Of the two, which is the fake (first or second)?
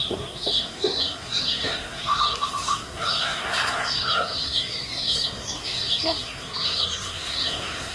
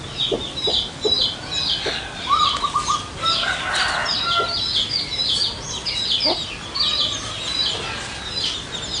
first